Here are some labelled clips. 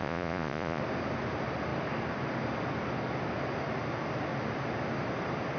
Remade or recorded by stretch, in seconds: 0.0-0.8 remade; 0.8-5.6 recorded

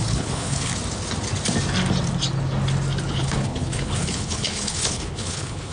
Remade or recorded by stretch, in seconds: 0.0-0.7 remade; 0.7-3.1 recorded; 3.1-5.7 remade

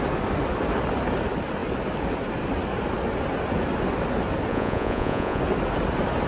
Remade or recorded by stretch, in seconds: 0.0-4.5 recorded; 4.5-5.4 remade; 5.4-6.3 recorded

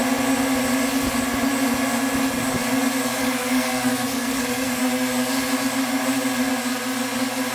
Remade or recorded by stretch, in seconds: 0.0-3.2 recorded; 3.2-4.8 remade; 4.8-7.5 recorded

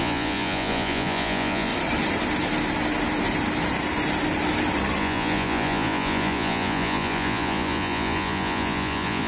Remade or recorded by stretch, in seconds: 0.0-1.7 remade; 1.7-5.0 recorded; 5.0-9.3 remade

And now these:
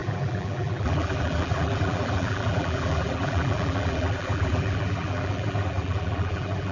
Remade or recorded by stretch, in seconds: 0.0-6.7 remade

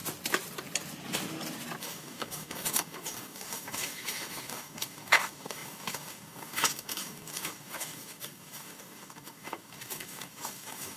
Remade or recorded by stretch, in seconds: 0.0-1.8 recorded; 1.8-11.0 remade